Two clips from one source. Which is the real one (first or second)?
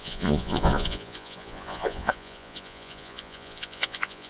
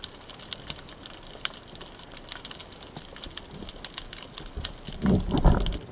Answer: second